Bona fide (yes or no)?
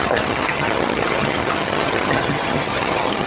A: no